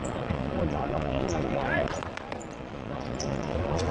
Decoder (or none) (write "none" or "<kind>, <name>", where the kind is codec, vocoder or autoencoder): vocoder, Vocos